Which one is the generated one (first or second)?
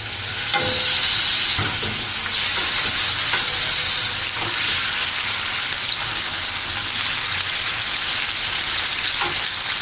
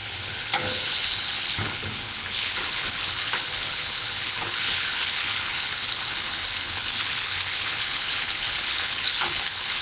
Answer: second